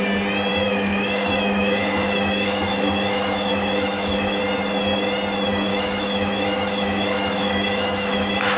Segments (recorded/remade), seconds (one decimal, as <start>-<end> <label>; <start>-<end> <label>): 0.0-0.5 recorded; 0.5-4.4 remade; 4.4-5.7 recorded; 5.7-8.6 remade